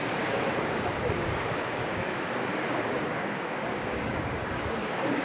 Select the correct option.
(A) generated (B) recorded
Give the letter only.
A